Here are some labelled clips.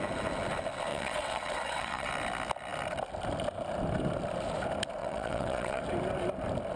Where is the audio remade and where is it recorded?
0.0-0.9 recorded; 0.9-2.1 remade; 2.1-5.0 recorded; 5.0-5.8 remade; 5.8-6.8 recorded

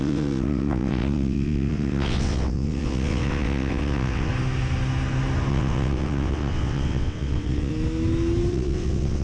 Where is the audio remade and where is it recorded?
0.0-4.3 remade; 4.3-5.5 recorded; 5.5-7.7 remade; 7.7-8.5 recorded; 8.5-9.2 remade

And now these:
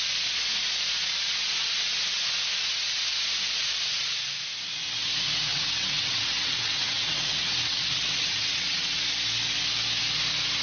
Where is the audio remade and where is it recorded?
0.0-5.5 recorded; 5.5-9.0 remade; 9.0-10.6 recorded

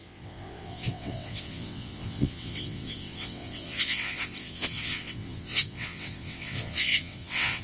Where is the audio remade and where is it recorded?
0.0-7.6 remade

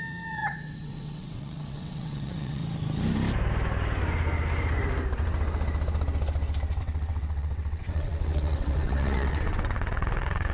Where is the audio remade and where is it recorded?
0.0-2.6 remade; 2.6-6.8 recorded; 6.8-10.5 remade

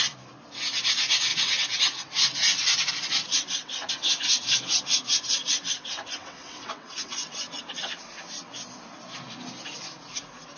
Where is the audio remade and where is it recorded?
0.0-1.3 recorded; 1.3-2.9 remade; 2.9-3.3 recorded; 3.3-3.9 remade; 3.9-5.4 recorded; 5.4-7.6 remade; 7.6-10.6 recorded

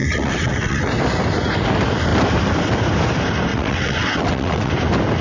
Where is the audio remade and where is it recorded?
0.0-0.9 remade; 0.9-3.5 recorded; 3.5-4.7 remade; 4.7-5.2 recorded

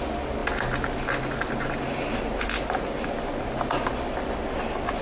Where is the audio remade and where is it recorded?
0.0-5.0 recorded